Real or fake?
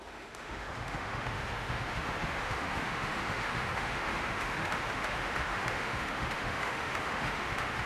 fake